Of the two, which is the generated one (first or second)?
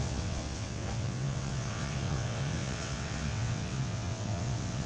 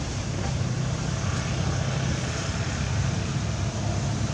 first